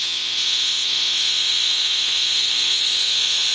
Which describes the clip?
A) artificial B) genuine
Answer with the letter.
A